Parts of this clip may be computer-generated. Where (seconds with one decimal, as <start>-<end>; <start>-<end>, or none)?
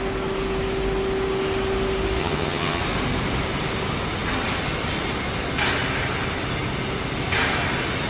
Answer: 2.2-2.8